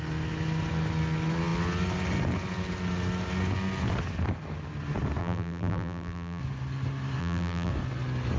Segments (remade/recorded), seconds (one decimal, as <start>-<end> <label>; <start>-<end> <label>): 0.0-5.2 recorded; 5.2-6.4 remade; 6.4-7.2 recorded; 7.2-7.7 remade; 7.7-8.4 recorded